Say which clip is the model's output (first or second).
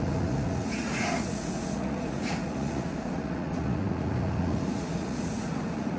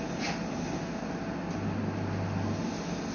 first